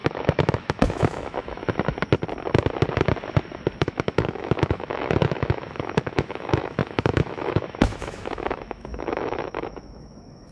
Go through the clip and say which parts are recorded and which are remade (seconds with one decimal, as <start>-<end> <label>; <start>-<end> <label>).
0.0-1.6 remade; 1.6-3.8 recorded; 3.8-10.5 remade